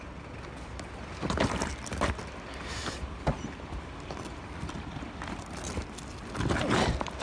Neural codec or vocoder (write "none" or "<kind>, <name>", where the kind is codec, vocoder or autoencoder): vocoder, BigVGAN v2